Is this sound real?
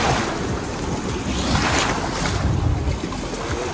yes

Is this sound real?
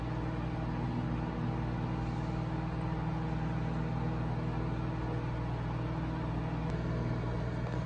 yes